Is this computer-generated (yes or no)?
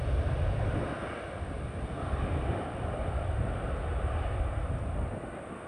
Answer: no